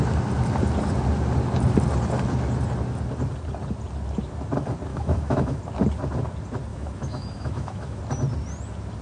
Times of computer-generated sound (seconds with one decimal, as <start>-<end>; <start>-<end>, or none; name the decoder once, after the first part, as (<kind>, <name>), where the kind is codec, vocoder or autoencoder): 4.9-5.6 (autoencoder, DAC-VAE); 6.7-8.0